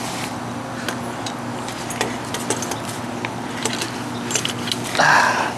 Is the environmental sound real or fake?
real